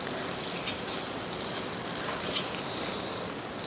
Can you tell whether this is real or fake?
real